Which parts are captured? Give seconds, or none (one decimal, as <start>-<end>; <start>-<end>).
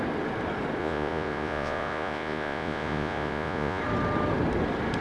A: 0.0-0.8; 3.8-5.0